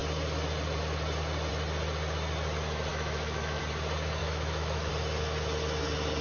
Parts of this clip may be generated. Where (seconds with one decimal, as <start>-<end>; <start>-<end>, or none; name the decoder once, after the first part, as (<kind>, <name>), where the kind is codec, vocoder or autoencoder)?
2.9-3.6 (autoencoder, DAC-VAE); 4.2-4.9